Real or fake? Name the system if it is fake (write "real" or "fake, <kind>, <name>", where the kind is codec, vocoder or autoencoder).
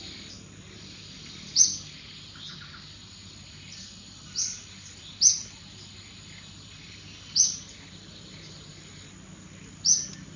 real